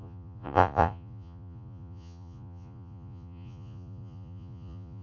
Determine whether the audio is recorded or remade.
remade